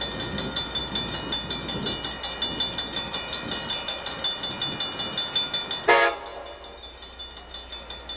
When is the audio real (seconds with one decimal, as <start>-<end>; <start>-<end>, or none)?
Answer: 0.0-8.2